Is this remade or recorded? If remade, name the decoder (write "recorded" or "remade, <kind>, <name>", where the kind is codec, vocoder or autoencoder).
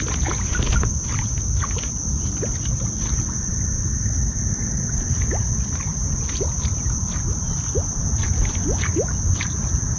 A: recorded